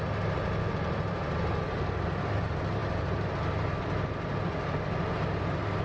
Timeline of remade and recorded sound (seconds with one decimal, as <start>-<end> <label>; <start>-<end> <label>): 0.0-5.8 recorded